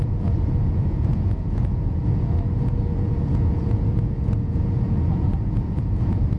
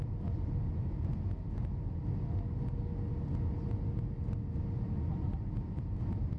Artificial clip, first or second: first